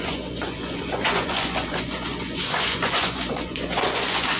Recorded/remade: remade